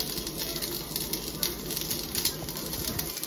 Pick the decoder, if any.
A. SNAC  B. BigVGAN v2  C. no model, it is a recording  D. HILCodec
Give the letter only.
C